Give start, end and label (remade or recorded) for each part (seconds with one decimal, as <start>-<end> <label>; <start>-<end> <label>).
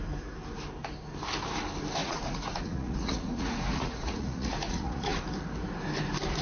0.0-2.0 recorded; 2.0-5.2 remade; 5.2-6.4 recorded